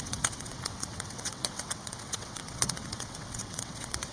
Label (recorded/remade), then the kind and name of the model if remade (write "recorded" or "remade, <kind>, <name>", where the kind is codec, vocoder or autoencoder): remade, vocoder, WaveNeXt